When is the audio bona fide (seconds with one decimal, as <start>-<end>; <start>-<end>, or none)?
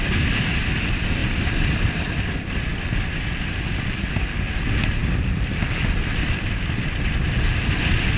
0.0-1.2; 2.2-5.0; 7.1-8.2